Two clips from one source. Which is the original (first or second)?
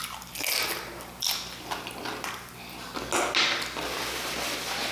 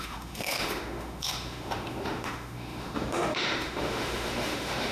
first